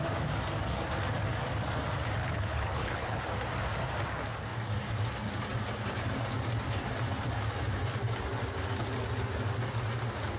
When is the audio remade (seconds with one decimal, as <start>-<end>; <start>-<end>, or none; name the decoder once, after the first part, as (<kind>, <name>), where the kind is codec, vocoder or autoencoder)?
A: 2.2-3.2 (codec, HILCodec)